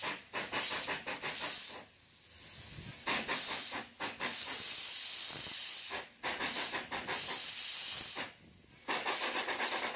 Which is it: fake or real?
real